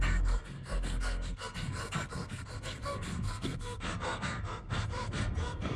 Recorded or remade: remade